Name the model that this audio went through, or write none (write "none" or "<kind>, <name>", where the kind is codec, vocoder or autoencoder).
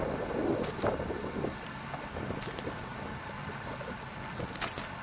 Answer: none